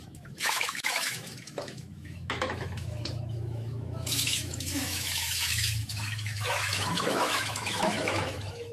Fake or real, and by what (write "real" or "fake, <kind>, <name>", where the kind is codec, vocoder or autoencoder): fake, autoencoder, DAC-VAE